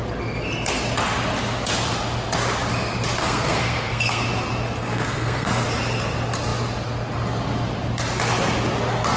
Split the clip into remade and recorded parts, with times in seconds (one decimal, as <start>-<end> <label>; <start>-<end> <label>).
0.0-3.2 recorded; 3.2-4.2 remade; 4.2-4.8 recorded; 4.8-5.6 remade; 5.6-9.2 recorded